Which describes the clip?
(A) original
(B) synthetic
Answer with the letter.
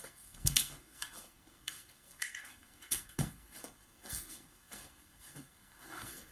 B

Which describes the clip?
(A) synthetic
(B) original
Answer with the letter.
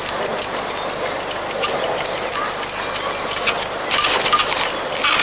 B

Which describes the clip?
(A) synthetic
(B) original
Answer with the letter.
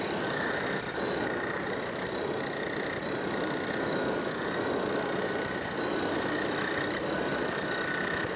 B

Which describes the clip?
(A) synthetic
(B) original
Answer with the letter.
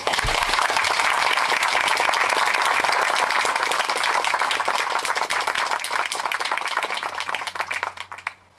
B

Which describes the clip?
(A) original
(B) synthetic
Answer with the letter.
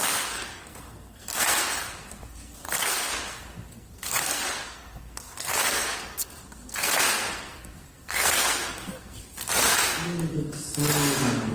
B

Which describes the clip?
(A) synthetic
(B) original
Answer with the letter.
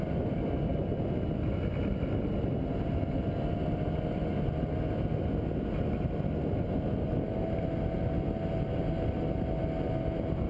B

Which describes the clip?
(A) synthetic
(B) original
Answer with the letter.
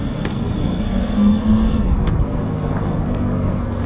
A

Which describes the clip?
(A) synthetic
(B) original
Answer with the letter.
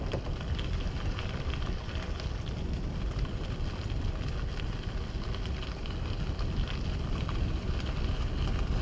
B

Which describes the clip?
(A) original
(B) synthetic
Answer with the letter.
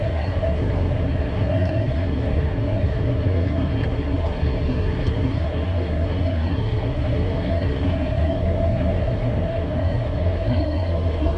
B